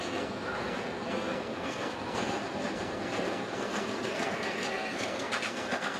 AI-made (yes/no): yes